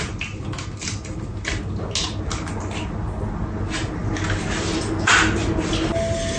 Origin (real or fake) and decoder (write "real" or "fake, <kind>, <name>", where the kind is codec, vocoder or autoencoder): real